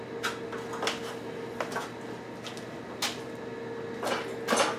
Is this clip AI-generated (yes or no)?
no